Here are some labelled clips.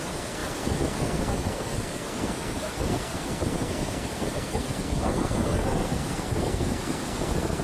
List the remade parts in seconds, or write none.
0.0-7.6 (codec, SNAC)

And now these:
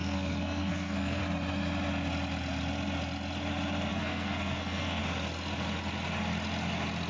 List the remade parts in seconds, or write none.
0.0-1.2 (codec, SNAC); 3.9-5.0

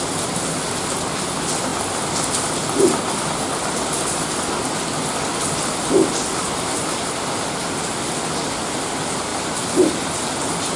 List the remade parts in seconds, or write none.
none